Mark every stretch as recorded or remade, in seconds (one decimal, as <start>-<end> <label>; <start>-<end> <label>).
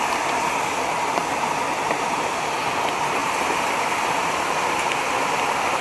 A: 0.0-5.8 recorded